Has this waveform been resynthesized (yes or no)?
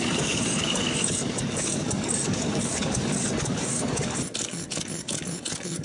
yes